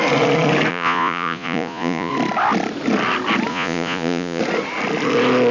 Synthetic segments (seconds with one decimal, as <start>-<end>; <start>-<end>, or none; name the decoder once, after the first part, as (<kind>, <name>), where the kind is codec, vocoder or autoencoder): 0.7-2.1 (vocoder, Vocos); 3.5-4.4